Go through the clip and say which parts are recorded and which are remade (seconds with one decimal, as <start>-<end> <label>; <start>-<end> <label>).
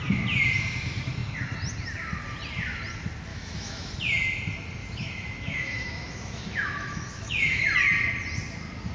0.0-3.3 recorded; 3.3-3.9 remade; 3.9-4.8 recorded; 4.8-7.6 remade; 7.6-8.9 recorded